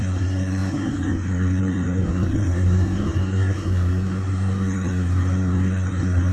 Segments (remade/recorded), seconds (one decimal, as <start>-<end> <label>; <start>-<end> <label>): 0.0-6.3 remade